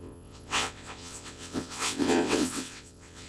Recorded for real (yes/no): no